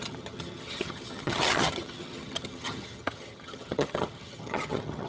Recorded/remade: remade